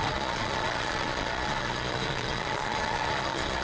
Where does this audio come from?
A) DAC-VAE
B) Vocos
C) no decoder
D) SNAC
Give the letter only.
B